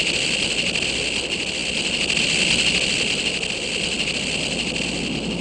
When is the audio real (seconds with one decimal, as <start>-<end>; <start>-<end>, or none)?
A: 0.0-5.4